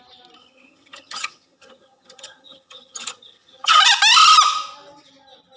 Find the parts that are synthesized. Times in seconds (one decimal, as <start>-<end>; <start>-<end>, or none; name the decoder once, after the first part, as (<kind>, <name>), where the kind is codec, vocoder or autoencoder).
0.4-3.8 (vocoder, HiFi-GAN)